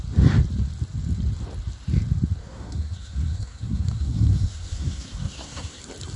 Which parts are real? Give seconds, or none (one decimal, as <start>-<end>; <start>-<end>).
0.0-2.4; 5.8-6.2